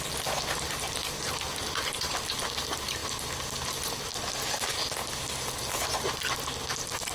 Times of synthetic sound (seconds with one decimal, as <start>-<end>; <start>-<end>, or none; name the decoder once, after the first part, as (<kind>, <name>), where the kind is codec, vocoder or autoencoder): none